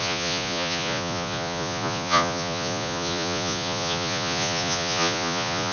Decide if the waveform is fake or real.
fake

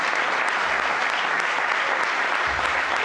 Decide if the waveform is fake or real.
real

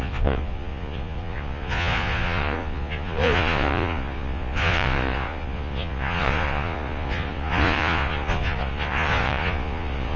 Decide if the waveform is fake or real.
fake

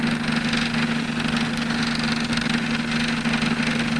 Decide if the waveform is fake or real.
real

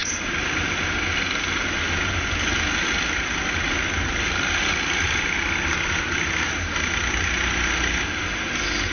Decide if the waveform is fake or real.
real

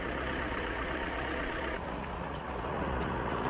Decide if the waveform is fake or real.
fake